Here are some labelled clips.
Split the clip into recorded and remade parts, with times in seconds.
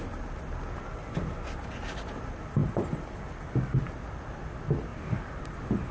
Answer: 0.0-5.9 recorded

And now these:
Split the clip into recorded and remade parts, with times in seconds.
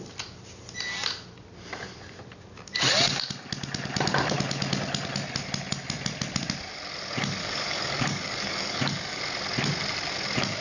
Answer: 0.0-7.4 recorded; 7.4-9.2 remade; 9.2-10.6 recorded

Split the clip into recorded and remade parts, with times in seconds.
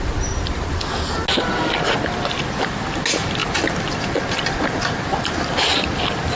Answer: 0.0-6.4 recorded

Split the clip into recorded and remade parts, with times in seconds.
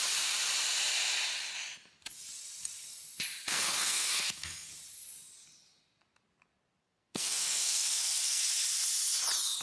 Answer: 0.0-3.5 recorded; 3.5-4.7 remade; 4.7-6.8 recorded; 6.8-8.4 remade; 8.4-9.6 recorded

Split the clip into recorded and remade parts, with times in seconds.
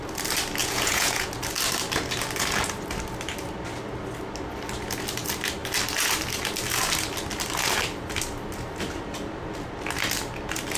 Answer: 0.0-0.6 recorded; 0.6-1.3 remade; 1.3-10.8 recorded